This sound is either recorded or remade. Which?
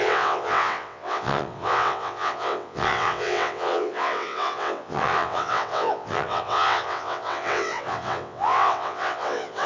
remade